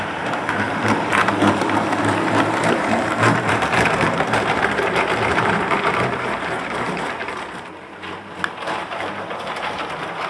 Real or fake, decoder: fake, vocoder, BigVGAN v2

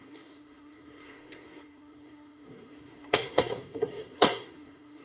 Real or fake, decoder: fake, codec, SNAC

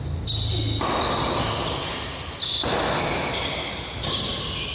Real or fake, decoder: real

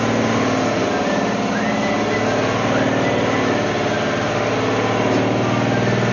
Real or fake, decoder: real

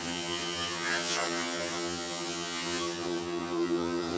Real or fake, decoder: fake, vocoder, HiFi-GAN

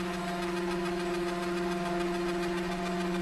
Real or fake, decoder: real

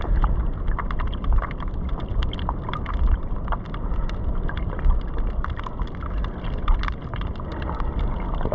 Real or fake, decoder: real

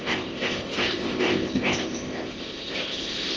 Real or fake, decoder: fake, codec, ZipCodec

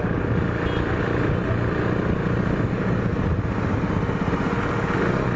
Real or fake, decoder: real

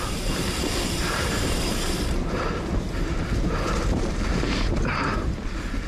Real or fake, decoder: fake, vocoder, BigVGAN v2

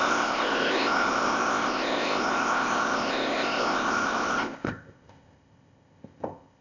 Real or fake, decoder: fake, codec, ZipCodec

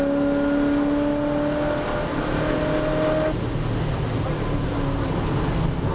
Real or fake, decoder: real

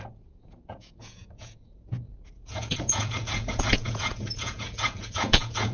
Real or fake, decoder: fake, vocoder, Vocos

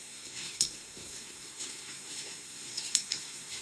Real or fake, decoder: fake, codec, SNAC